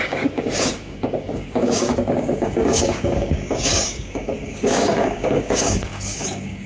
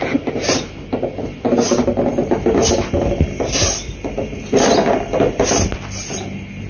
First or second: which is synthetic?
first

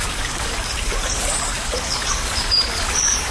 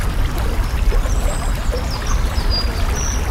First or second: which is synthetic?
first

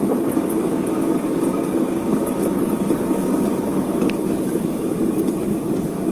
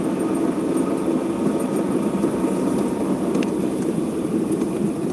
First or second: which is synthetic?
first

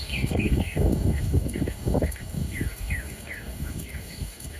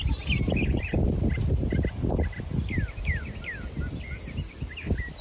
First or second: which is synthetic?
first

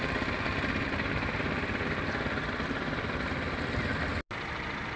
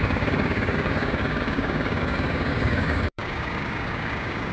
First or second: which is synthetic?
second